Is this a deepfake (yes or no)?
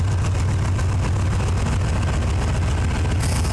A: no